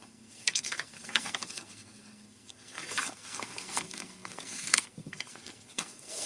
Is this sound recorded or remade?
remade